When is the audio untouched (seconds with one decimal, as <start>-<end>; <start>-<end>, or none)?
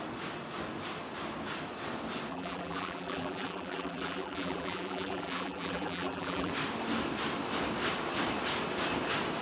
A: 0.0-2.3; 6.5-9.4